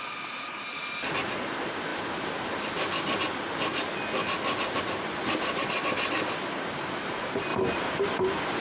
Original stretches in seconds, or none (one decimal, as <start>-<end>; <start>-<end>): 0.0-8.6

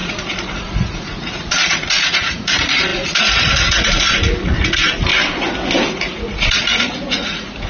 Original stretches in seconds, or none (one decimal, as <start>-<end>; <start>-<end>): 5.1-5.9

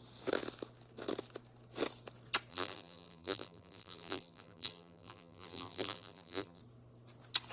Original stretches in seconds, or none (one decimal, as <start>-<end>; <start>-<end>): 0.0-2.5; 6.6-7.5

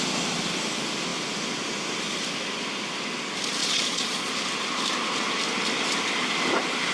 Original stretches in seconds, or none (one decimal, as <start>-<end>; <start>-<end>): 0.0-3.6; 4.3-6.9

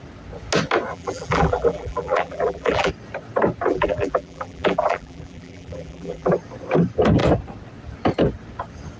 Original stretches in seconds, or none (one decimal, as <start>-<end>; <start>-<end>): 0.0-0.9; 2.9-3.7; 6.3-9.0

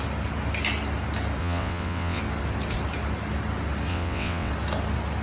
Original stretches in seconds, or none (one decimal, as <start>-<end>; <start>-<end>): 0.0-1.4; 2.2-3.9; 4.5-5.2

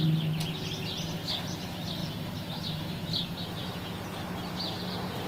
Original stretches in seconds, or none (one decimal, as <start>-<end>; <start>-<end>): 0.0-5.3